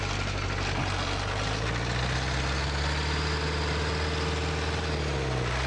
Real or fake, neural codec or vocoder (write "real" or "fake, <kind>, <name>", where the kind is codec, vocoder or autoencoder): real